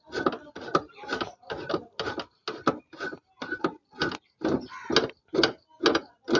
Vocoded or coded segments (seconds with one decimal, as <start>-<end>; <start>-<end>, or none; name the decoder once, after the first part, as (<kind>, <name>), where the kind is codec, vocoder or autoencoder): none